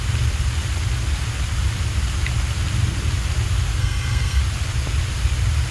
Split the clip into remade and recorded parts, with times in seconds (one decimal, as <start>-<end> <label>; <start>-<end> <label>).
0.0-3.8 recorded; 3.8-4.4 remade; 4.4-5.7 recorded